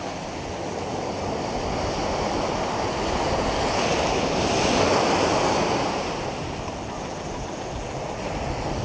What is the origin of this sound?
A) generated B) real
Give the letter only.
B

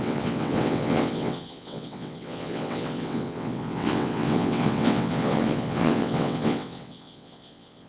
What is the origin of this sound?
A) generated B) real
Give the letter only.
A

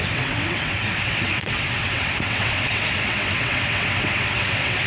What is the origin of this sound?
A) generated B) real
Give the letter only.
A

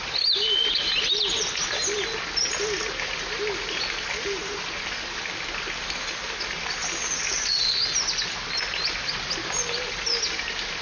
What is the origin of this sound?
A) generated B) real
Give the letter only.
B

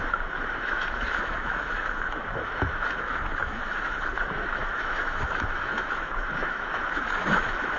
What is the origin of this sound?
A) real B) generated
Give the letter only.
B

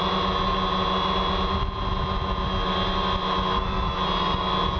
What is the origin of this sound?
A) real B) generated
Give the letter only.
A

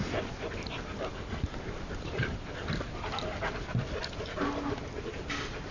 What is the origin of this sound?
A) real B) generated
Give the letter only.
A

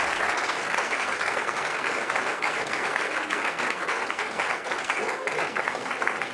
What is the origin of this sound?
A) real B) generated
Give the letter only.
B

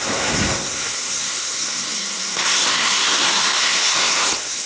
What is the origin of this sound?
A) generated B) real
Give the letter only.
A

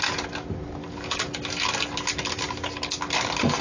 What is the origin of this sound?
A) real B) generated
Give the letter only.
A